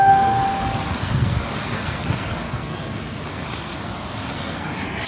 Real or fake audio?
fake